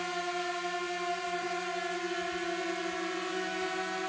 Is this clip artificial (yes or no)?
no